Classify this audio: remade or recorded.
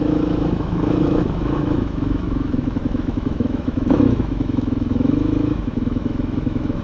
remade